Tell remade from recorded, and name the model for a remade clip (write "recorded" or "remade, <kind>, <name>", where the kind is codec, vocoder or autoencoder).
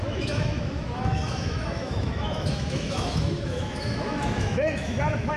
remade, autoencoder, DAC-VAE